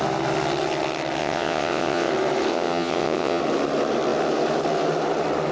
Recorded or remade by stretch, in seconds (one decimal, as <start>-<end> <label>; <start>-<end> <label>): 0.0-1.2 recorded; 1.2-2.1 remade; 2.1-2.5 recorded; 2.5-3.4 remade; 3.4-5.5 recorded

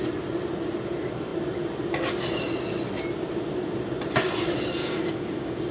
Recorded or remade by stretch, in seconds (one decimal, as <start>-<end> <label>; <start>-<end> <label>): 0.0-4.8 recorded; 4.8-5.7 remade